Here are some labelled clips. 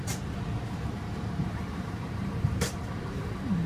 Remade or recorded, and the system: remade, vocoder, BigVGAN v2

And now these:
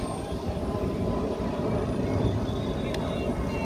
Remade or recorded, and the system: recorded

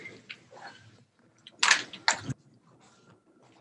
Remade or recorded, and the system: recorded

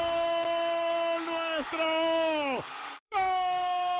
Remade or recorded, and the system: remade, codec, DAC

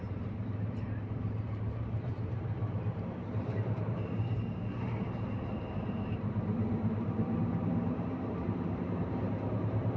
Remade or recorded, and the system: remade, vocoder, BigVGAN v2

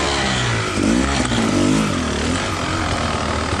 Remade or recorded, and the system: recorded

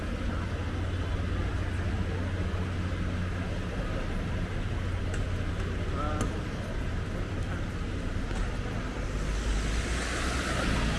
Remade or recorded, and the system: recorded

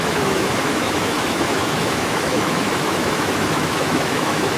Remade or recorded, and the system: remade, autoencoder, DAC-VAE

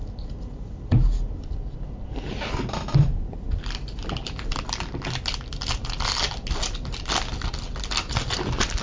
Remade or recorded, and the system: recorded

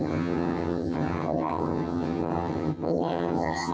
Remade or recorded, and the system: remade, vocoder, HiFi-GAN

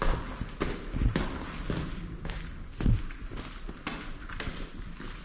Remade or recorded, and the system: recorded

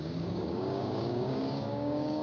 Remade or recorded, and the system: remade, codec, DAC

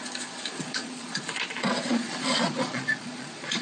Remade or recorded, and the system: remade, vocoder, Vocos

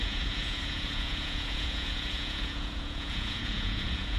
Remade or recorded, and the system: remade, vocoder, Vocos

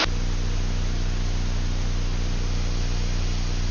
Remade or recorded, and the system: recorded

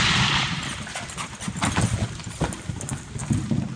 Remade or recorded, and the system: recorded